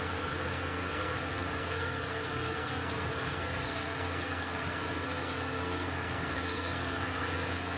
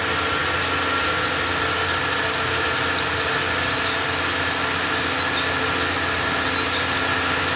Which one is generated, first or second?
first